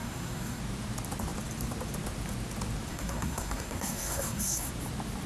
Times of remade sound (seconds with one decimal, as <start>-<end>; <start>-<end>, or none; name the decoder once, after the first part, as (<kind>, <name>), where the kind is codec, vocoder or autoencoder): 0.0-0.6 (codec, SNAC); 2.9-4.7